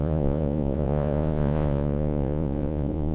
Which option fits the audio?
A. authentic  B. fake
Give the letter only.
B